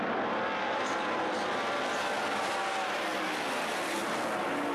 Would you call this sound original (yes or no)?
yes